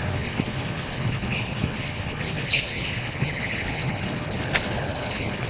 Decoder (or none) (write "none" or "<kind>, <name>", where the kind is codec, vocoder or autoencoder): codec, HILCodec